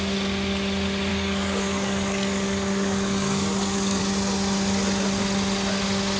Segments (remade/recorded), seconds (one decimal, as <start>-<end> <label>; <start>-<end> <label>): 0.0-1.1 recorded; 1.1-4.0 remade; 4.0-6.2 recorded